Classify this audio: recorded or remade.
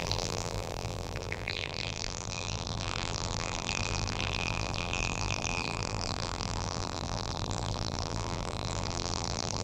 remade